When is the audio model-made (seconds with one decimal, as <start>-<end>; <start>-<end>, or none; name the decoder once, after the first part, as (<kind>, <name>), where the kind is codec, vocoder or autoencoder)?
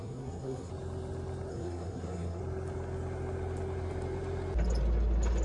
0.0-0.7 (codec, SNAC); 1.5-2.4